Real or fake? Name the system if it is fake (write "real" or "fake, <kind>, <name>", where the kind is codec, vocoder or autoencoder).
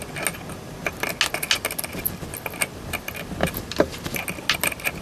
real